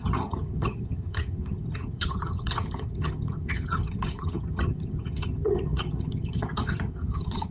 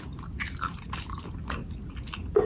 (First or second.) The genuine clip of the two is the second